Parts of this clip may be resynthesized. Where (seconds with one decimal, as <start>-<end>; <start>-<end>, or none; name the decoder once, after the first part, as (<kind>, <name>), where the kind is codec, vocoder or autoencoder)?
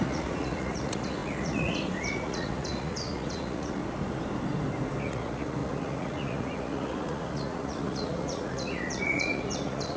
0.0-3.8 (vocoder, Vocos); 5.0-10.0